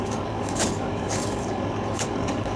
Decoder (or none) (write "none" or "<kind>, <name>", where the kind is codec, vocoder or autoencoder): codec, DAC